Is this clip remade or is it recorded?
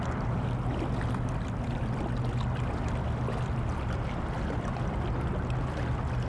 recorded